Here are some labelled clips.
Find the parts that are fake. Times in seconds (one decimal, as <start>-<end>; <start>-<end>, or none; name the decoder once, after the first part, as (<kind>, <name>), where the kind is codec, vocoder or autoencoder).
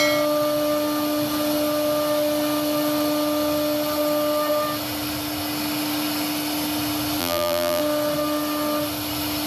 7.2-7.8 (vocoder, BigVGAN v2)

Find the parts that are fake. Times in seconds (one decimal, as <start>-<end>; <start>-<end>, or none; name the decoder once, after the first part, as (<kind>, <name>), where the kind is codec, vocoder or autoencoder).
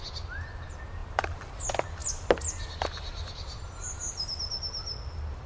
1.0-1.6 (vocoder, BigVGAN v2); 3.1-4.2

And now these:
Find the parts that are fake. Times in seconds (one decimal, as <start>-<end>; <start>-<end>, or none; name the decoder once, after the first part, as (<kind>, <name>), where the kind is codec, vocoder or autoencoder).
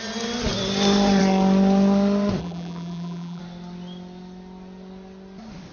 2.4-3.4 (vocoder, BigVGAN v2)